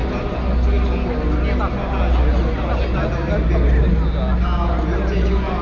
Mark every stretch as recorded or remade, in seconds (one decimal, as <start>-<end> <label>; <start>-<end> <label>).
0.0-5.6 recorded